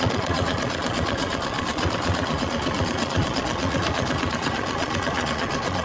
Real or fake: fake